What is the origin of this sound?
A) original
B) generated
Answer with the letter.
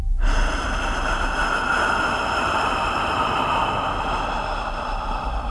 A